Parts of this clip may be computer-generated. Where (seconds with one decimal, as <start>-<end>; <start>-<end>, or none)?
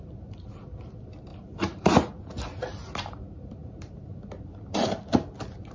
1.3-2.2; 3.6-4.3